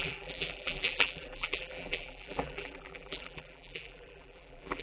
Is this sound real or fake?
fake